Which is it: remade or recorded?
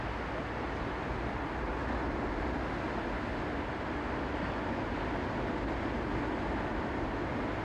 recorded